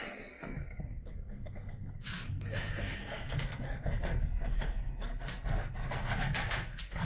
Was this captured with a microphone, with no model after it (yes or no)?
no